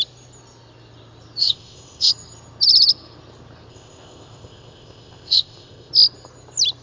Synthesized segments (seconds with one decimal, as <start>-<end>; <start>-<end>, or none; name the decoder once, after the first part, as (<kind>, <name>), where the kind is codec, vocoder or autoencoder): 1.4-2.1 (codec, ZipCodec); 3.7-5.9